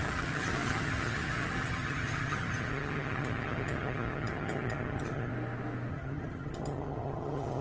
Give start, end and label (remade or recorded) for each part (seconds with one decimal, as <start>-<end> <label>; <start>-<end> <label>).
0.0-5.3 remade; 5.3-5.9 recorded; 5.9-7.6 remade